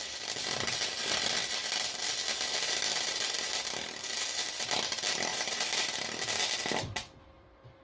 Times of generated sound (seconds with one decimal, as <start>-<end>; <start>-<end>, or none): 5.3-5.9